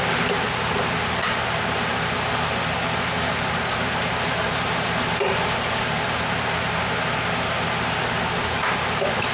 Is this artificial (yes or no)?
no